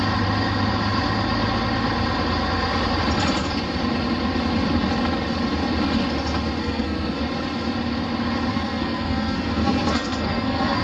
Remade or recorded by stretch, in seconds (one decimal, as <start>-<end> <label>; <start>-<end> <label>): 0.0-6.6 recorded; 6.6-7.2 remade; 7.2-8.5 recorded; 8.5-10.8 remade

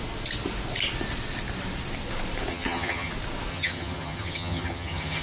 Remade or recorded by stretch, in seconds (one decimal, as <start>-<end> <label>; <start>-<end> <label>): 0.0-2.5 recorded; 2.5-3.1 remade; 3.1-3.5 recorded; 3.5-5.2 remade